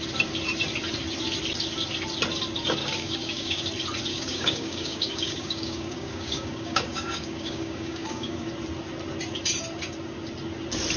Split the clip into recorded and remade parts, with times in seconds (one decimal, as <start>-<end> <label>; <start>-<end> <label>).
0.0-2.8 recorded; 2.8-3.6 remade; 3.6-4.1 recorded; 4.1-8.5 remade; 8.5-11.0 recorded